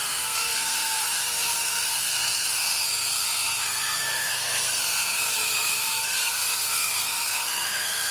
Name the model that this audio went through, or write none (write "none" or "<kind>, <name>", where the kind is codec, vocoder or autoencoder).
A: codec, SNAC